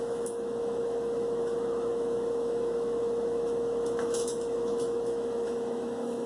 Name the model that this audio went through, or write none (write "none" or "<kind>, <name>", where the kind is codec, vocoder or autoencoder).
autoencoder, DAC-VAE